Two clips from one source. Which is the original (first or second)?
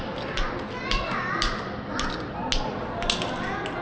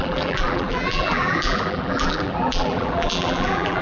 first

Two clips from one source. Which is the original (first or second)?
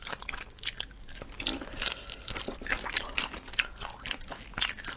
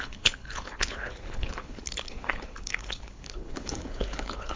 first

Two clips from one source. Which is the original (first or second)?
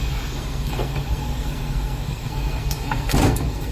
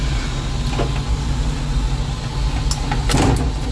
second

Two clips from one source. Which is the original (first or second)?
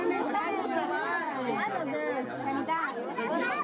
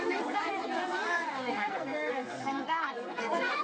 first